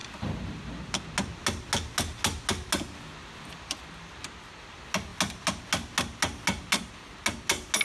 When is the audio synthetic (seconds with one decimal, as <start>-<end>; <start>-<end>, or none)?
none